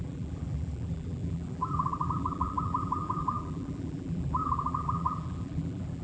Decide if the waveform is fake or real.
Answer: fake